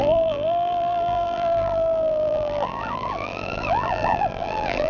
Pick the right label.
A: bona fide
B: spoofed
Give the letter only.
B